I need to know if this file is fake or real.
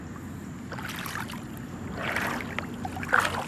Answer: real